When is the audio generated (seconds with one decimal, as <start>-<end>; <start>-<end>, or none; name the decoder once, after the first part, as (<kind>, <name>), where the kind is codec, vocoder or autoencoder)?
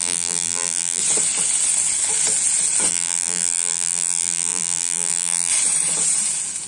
0.0-1.0 (vocoder, BigVGAN v2); 2.9-5.5